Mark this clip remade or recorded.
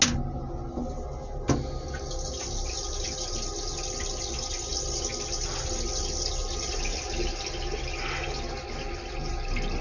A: recorded